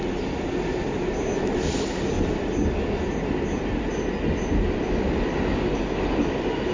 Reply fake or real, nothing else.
real